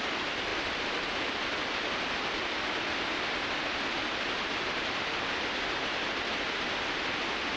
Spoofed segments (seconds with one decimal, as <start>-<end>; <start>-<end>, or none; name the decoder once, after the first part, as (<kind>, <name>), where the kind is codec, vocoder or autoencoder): none